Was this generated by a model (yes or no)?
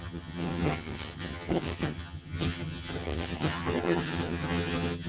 yes